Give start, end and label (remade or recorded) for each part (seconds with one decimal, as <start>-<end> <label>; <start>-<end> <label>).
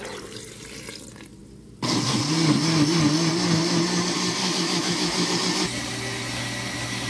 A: 0.0-4.4 recorded; 4.4-5.3 remade; 5.3-7.1 recorded